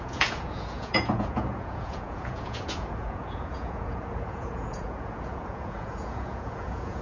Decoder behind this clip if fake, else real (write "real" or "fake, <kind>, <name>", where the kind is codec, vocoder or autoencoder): fake, vocoder, Vocos